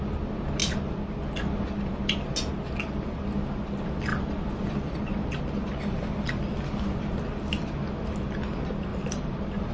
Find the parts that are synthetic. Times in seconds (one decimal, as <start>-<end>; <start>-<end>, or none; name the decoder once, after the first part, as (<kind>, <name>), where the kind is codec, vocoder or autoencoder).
4.1-5.4 (vocoder, BigVGAN v2); 8.9-9.7